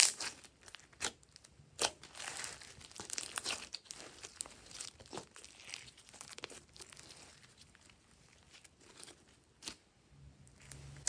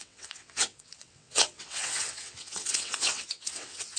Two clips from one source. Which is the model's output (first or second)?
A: second